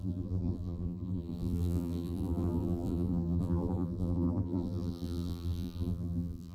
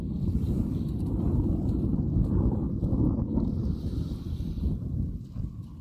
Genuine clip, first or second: second